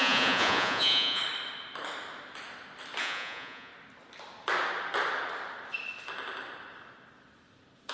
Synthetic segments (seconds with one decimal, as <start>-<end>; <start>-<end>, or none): 0.0-1.2; 3.0-3.7